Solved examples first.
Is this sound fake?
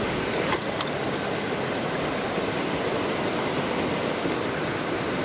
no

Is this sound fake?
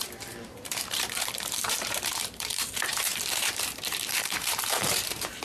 yes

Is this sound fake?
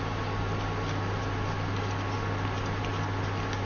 no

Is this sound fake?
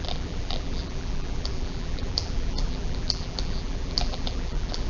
yes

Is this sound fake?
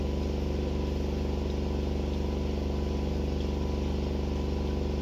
no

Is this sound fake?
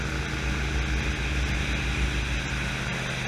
no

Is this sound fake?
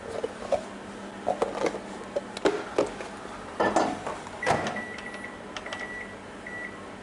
no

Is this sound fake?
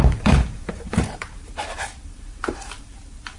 yes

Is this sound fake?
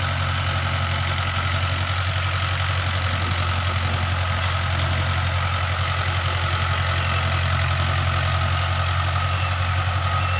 no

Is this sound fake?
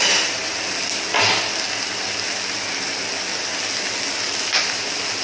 no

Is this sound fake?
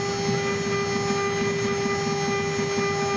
no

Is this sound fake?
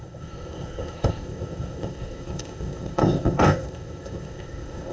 yes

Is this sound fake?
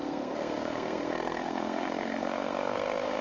yes